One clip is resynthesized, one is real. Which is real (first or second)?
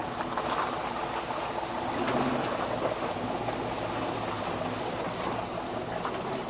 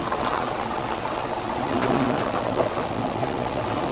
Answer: first